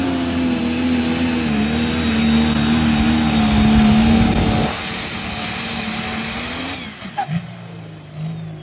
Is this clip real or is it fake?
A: real